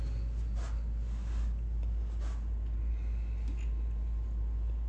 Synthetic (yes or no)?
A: no